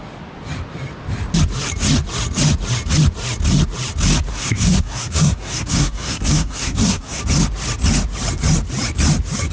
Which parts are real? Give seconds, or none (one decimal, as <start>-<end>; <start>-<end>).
0.0-4.3; 7.2-9.5